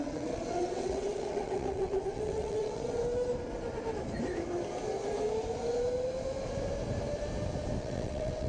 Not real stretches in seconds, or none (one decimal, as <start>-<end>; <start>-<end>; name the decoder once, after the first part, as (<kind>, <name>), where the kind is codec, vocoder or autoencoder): 0.0-3.0 (vocoder, WaveNeXt); 7.8-8.5